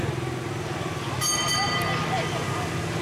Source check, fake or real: real